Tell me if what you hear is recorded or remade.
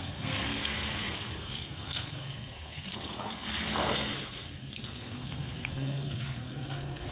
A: remade